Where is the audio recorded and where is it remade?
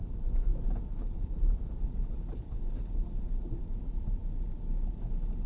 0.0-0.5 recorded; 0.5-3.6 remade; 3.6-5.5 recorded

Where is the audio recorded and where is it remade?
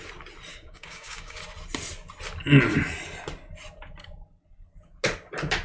0.0-0.5 recorded; 0.5-1.4 remade; 1.4-5.6 recorded